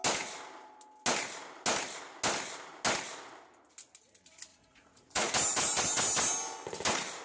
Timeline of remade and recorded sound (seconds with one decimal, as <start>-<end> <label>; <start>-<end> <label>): 0.0-4.5 recorded; 4.5-5.3 remade; 5.3-7.2 recorded